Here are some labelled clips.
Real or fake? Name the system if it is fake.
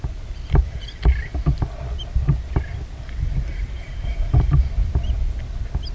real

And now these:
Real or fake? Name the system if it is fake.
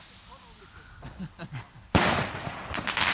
real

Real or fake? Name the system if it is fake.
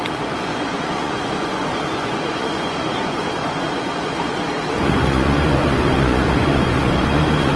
fake, vocoder, Vocos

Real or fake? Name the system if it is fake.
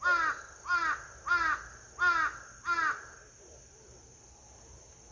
real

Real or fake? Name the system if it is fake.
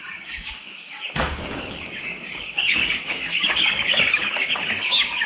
fake, codec, DAC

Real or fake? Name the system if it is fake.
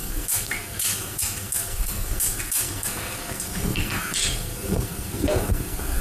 fake, codec, SNAC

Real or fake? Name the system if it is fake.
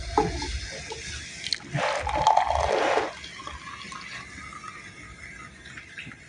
real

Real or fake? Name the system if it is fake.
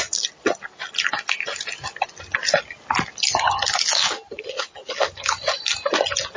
real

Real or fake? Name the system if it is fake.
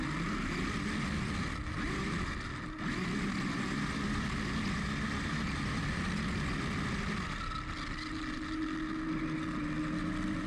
real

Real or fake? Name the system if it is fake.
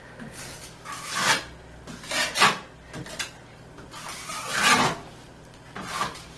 real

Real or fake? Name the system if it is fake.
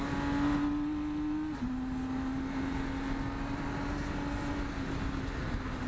real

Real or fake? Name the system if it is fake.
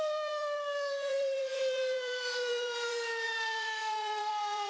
fake, vocoder, BigVGAN v2